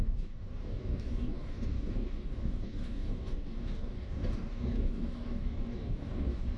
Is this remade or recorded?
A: remade